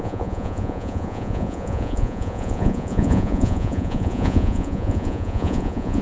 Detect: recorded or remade remade